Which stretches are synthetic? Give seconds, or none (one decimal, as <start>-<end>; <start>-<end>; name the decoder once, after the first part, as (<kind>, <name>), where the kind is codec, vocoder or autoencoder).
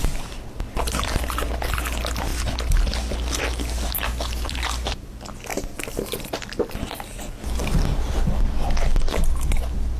5.5-6.8 (vocoder, BigVGAN v2); 7.6-8.4